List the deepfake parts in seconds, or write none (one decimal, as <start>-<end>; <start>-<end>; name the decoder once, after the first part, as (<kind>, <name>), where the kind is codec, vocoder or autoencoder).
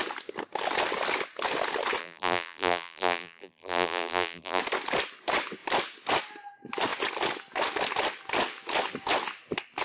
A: 2.0-4.6 (vocoder, BigVGAN v2)